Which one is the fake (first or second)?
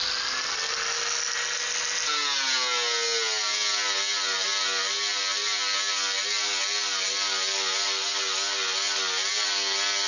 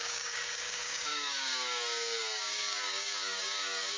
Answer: second